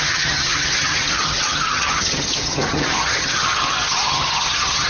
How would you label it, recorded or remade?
remade